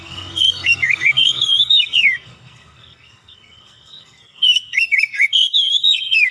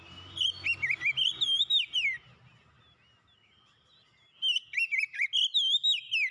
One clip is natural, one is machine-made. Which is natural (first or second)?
second